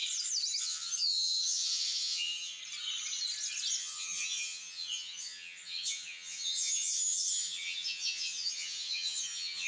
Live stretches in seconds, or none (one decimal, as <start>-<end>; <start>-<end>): 0.0-0.6; 2.6-3.8